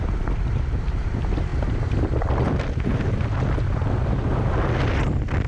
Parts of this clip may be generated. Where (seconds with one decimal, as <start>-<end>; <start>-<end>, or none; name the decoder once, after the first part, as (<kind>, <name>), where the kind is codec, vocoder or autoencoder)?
none